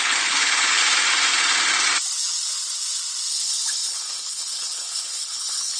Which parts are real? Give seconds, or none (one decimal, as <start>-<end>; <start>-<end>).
0.8-3.3